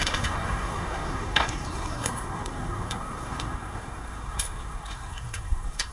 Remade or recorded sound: remade